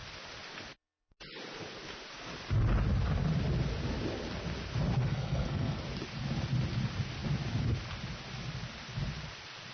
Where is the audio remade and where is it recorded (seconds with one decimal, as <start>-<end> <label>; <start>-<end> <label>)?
0.0-5.0 recorded; 5.0-5.8 remade; 5.8-9.7 recorded